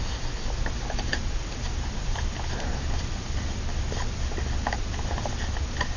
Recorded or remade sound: recorded